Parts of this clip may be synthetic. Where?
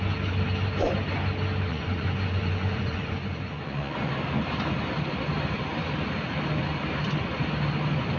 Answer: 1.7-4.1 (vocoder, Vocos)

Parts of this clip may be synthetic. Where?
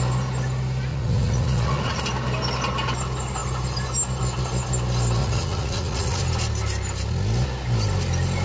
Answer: 0.9-2.0 (vocoder, Vocos); 5.2-6.2